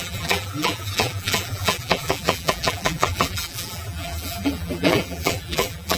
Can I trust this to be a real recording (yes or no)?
no